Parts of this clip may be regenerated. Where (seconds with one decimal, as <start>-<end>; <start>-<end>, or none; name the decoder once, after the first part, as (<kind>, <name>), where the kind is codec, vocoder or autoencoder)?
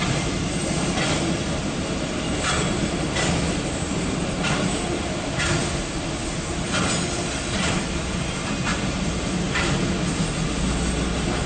8.7-9.3 (vocoder, BigVGAN v2)